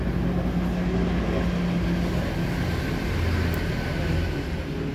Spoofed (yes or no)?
no